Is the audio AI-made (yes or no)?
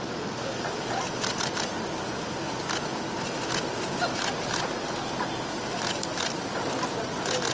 no